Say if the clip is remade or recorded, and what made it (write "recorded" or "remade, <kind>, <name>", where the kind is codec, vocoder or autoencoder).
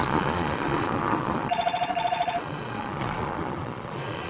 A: remade, vocoder, Vocos